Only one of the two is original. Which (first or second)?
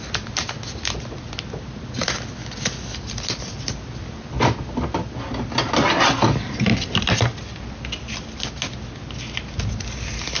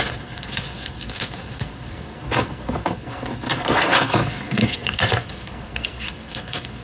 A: first